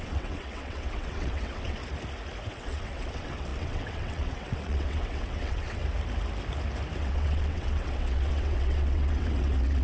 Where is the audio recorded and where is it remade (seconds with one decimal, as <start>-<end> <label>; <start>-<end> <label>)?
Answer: 0.0-1.8 remade; 1.8-2.5 recorded; 2.5-5.8 remade; 5.8-7.0 recorded; 7.0-9.8 remade